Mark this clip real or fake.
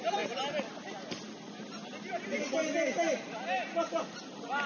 real